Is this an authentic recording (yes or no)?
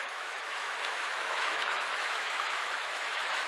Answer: no